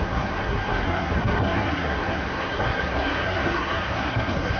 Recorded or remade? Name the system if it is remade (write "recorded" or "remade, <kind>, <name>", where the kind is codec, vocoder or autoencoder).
remade, codec, SNAC